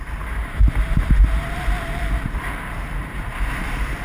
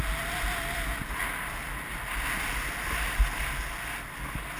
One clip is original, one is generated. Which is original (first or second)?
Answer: second